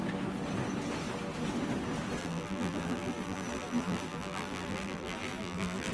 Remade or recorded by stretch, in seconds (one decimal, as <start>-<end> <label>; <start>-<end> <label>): 0.0-2.2 recorded; 2.2-5.9 remade